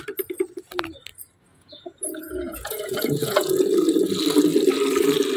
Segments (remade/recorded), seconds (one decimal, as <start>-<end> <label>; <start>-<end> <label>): 0.0-1.5 recorded; 1.5-3.6 remade; 3.6-5.4 recorded